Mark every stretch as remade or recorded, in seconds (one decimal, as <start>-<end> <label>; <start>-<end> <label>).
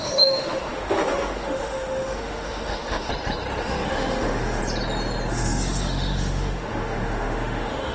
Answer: 0.0-3.1 remade; 3.1-3.6 recorded; 3.6-4.6 remade; 4.6-5.3 recorded; 5.3-7.9 remade